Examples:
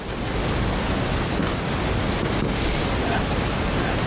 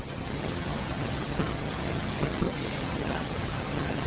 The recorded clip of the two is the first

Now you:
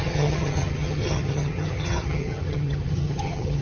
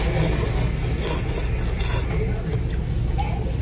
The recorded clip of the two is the second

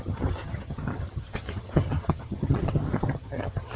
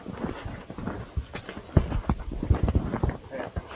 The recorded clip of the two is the second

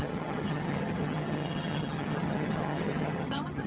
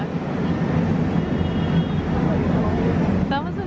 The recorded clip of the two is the second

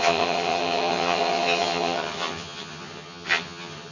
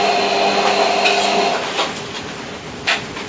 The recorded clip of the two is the second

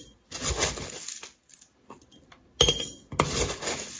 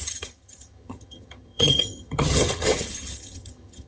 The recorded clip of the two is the first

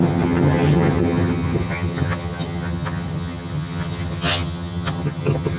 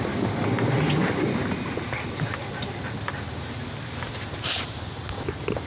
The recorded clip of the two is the second